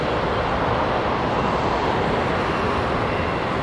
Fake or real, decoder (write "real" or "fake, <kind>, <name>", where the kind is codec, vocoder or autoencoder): real